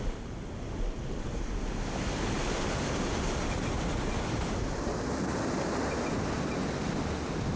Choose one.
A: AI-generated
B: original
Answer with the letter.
B